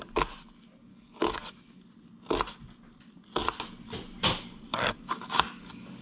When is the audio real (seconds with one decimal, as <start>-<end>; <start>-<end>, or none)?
0.0-0.9; 1.5-4.7